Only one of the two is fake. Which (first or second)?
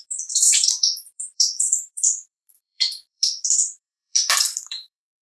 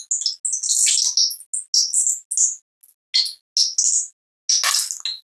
first